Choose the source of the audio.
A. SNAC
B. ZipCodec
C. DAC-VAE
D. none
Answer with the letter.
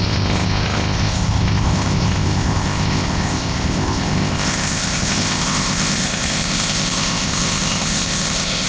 B